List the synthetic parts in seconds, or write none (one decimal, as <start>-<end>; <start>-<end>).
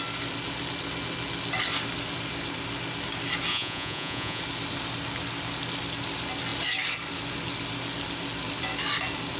3.5-4.4